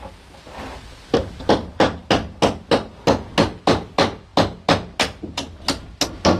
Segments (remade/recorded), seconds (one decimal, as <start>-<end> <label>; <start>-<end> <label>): 0.0-6.4 recorded